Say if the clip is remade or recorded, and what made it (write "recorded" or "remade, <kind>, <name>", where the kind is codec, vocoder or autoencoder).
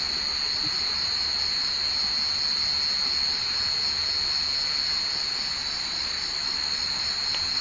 recorded